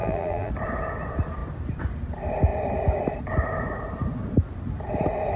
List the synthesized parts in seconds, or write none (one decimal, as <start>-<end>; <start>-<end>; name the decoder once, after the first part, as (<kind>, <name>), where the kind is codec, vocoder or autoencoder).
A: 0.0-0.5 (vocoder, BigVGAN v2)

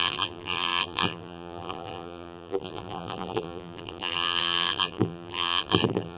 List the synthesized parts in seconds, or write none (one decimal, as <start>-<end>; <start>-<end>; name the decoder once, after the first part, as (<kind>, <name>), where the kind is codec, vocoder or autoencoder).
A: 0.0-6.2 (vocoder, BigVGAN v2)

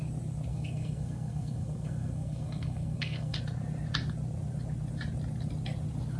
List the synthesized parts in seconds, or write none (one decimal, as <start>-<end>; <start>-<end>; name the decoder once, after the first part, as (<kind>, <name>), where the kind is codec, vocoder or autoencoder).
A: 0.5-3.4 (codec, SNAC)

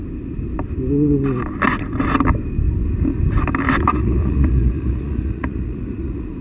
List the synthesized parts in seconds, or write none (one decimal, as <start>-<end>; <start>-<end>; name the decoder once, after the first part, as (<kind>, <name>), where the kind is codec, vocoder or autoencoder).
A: 3.8-6.4 (vocoder, Vocos)

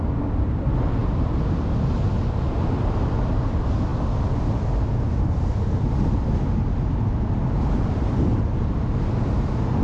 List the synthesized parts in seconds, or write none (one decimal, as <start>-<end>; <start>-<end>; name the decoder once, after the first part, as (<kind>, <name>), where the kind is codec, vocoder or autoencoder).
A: none

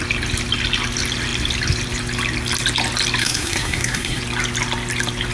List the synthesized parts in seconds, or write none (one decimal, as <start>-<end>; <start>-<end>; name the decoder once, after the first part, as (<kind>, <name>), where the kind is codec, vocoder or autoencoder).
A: 3.2-4.2 (codec, SNAC)

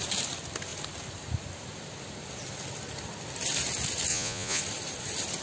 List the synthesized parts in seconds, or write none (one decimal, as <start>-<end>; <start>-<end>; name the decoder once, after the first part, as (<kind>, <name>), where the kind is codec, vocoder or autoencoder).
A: 4.1-4.6 (vocoder, Vocos)